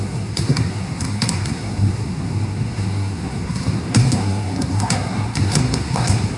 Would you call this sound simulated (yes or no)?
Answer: yes